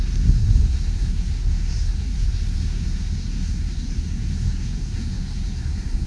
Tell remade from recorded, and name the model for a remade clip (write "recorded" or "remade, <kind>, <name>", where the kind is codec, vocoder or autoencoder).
remade, codec, SNAC